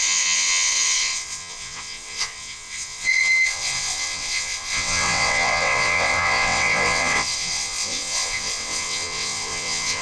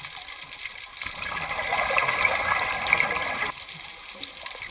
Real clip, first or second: second